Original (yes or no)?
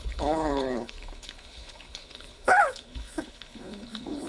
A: no